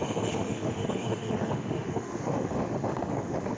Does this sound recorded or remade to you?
remade